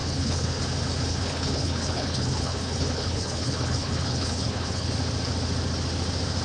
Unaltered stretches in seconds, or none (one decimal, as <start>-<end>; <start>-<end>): 0.6-1.1; 4.9-6.4